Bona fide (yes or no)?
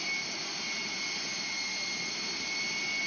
yes